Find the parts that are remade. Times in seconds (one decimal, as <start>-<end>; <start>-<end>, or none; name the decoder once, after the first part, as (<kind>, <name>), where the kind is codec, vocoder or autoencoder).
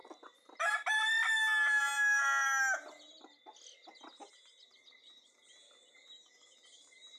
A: none